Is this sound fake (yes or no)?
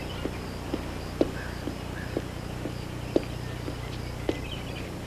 no